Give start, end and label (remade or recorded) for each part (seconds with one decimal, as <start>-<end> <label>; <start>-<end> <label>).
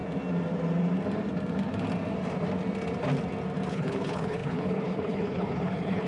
0.0-3.7 recorded; 3.7-6.1 remade